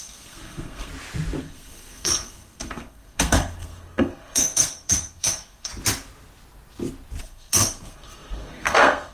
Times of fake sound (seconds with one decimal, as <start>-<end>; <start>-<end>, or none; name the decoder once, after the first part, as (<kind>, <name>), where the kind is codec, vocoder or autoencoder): 0.0-0.9 (codec, SNAC); 1.4-5.7; 7.2-9.1